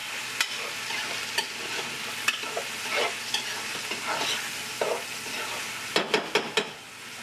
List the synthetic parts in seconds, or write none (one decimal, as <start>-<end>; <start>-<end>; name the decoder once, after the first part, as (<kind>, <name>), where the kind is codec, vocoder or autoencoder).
none